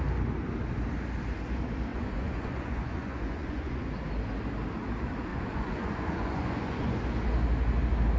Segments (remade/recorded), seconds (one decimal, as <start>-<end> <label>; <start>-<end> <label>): 0.0-1.9 recorded; 1.9-3.9 remade; 3.9-5.3 recorded; 5.3-7.0 remade; 7.0-8.2 recorded